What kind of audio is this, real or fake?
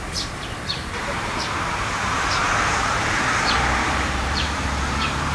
fake